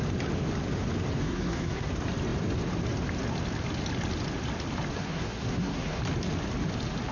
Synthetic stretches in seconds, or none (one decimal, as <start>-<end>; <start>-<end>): 1.2-1.9; 4.9-6.0